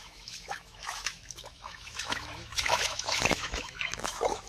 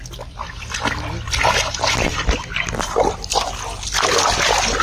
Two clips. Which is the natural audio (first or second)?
second